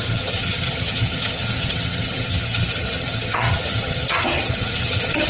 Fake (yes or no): yes